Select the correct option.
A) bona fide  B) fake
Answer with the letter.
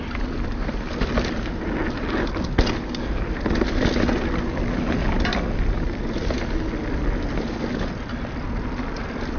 A